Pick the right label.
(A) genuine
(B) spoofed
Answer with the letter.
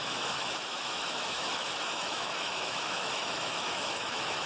B